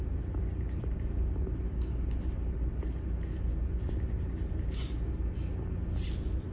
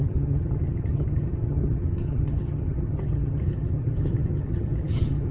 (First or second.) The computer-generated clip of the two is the second